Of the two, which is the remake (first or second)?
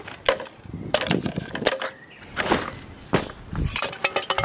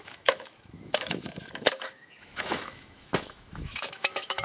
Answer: second